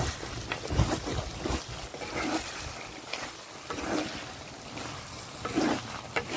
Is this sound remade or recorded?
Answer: recorded